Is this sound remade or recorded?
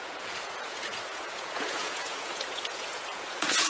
remade